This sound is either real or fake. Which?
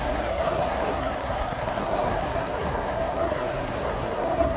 fake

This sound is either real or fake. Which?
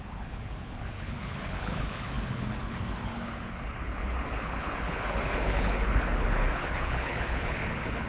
fake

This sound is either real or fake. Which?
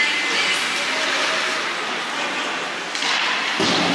real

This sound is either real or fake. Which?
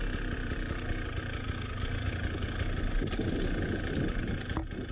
real